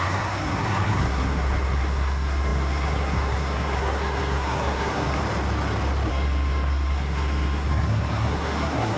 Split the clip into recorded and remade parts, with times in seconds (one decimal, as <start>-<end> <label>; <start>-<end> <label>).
0.0-5.2 remade; 5.2-6.1 recorded; 6.1-9.0 remade

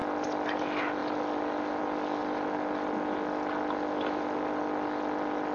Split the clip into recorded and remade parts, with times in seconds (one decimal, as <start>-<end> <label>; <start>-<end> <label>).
0.0-5.5 recorded

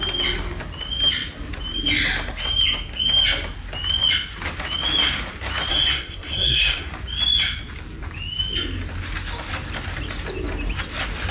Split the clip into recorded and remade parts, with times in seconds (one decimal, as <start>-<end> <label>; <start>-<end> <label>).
0.0-5.7 recorded; 5.7-6.9 remade; 6.9-11.3 recorded

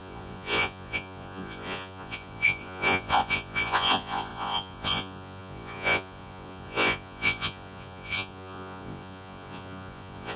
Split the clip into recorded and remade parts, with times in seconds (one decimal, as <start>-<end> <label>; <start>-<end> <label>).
0.0-10.4 remade

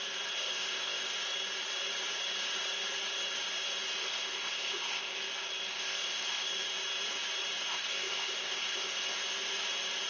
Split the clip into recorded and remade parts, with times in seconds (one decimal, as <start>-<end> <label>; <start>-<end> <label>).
0.0-0.4 recorded; 0.4-1.1 remade; 1.1-4.0 recorded; 4.0-5.2 remade; 5.2-5.7 recorded; 5.7-6.5 remade; 6.5-7.7 recorded; 7.7-9.2 remade; 9.2-10.1 recorded

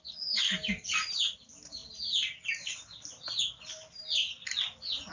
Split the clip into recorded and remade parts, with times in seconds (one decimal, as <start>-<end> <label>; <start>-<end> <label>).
0.0-5.1 recorded

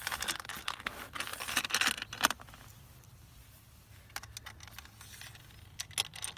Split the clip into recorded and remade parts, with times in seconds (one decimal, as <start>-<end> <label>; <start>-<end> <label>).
0.0-6.4 recorded